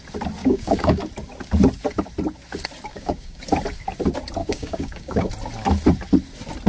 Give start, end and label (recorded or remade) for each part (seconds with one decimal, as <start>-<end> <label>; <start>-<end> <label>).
0.0-0.4 recorded; 0.4-1.0 remade; 1.0-2.9 recorded; 2.9-3.4 remade; 3.4-4.4 recorded; 4.4-5.3 remade; 5.3-6.7 recorded